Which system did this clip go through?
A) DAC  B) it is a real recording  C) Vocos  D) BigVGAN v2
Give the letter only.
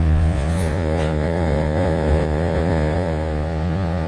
C